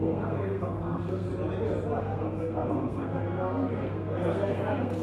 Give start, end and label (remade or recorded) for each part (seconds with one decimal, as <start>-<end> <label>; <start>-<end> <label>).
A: 0.0-1.3 remade; 1.3-2.0 recorded; 2.0-5.0 remade